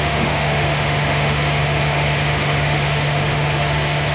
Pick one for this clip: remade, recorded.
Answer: remade